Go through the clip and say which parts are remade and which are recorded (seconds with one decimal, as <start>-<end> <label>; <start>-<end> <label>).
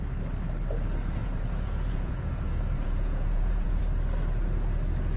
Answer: 0.0-1.2 recorded; 1.2-3.8 remade; 3.8-5.2 recorded